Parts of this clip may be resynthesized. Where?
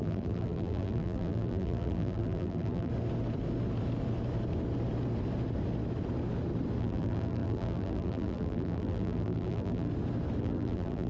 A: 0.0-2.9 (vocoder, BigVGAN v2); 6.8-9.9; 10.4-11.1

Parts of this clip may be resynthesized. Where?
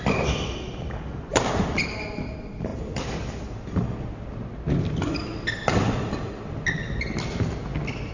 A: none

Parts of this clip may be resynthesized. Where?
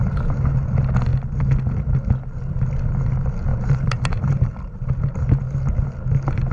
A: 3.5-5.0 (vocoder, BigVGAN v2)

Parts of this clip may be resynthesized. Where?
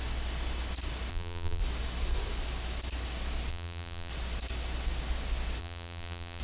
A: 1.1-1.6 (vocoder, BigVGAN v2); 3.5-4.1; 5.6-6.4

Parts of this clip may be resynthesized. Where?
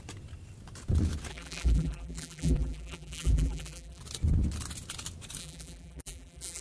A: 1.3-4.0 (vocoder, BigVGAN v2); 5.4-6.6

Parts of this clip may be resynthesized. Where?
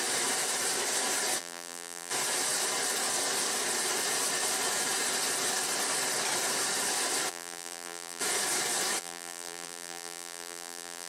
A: 1.4-2.1 (vocoder, BigVGAN v2); 7.3-8.2; 9.0-11.1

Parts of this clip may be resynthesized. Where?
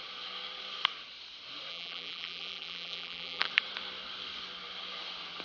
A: 1.7-3.5 (vocoder, BigVGAN v2)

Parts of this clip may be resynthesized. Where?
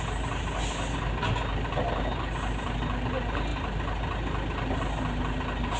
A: none